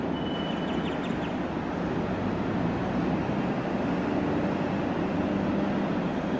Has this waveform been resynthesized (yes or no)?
no